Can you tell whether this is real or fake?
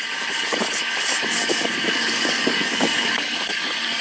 fake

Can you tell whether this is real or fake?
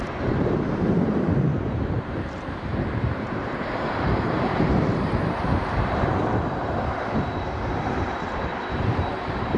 fake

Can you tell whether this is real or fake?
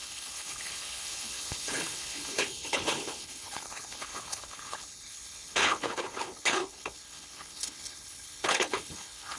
fake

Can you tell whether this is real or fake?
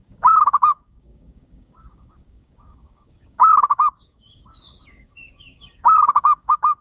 fake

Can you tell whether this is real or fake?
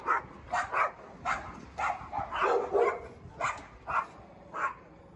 real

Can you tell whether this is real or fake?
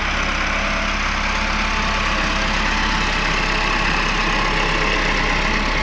real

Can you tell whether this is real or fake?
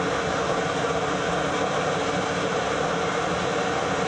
real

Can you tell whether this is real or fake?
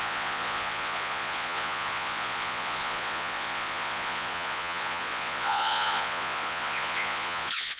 fake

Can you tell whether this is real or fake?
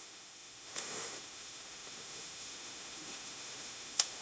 fake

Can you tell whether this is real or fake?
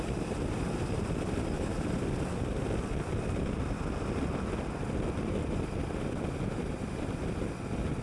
real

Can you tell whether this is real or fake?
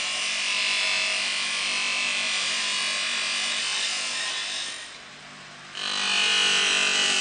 real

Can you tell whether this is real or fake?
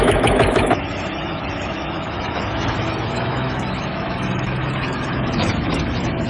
fake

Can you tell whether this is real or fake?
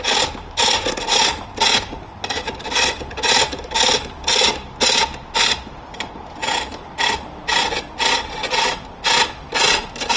real